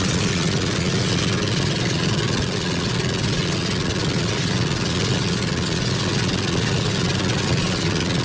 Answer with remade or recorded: remade